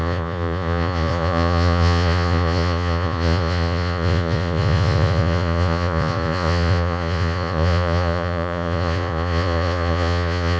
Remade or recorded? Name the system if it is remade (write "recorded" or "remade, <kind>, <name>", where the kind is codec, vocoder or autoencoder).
remade, vocoder, Vocos